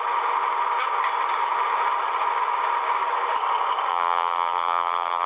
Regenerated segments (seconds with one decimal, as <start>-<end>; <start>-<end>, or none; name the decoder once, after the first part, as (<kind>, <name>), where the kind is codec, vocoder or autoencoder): 3.9-5.3 (vocoder, BigVGAN v2)